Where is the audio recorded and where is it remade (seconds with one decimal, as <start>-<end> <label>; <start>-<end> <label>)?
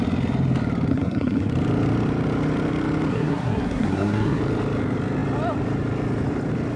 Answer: 0.0-0.9 recorded; 0.9-1.5 remade; 1.5-3.1 recorded; 3.1-4.4 remade; 4.4-6.8 recorded